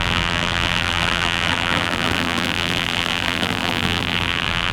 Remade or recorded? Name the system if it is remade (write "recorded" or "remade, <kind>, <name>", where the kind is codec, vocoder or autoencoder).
remade, vocoder, BigVGAN v2